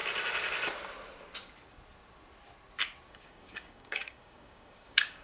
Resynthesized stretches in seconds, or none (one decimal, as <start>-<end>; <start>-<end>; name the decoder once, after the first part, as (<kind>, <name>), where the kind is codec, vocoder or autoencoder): 3.1-5.2 (codec, DAC)